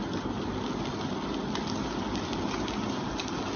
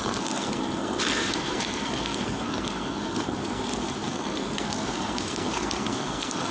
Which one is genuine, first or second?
first